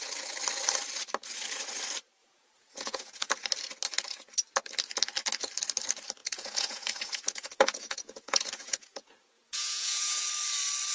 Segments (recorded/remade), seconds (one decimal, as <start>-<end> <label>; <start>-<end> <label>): 0.0-2.2 recorded; 2.2-3.3 remade; 3.3-6.2 recorded; 6.2-10.3 remade; 10.3-10.9 recorded